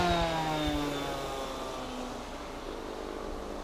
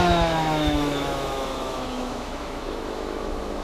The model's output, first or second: second